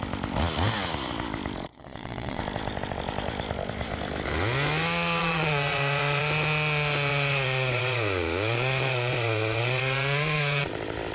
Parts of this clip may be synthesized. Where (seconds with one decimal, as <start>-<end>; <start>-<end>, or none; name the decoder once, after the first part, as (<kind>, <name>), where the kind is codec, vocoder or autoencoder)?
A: 1.7-2.4 (vocoder, Vocos); 5.2-6.2; 7.1-10.7